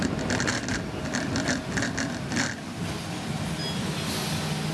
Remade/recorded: recorded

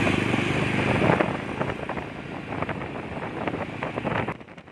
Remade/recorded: recorded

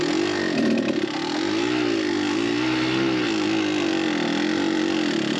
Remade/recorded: recorded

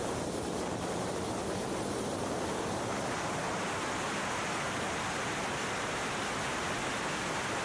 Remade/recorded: recorded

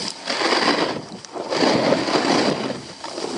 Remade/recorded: recorded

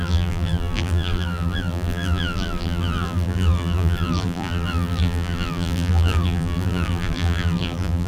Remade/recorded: remade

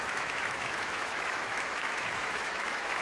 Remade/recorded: remade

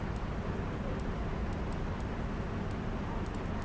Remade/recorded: recorded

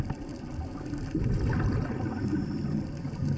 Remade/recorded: recorded